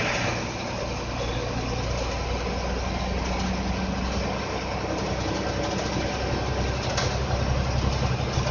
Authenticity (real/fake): real